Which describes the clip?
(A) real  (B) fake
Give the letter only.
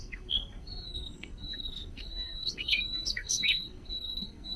B